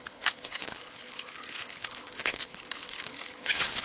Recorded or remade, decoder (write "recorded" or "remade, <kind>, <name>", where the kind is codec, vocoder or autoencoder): remade, codec, HILCodec